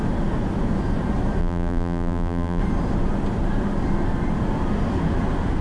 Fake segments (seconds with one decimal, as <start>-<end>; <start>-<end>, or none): 1.4-2.6